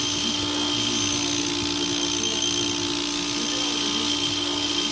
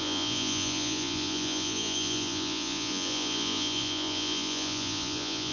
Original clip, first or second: first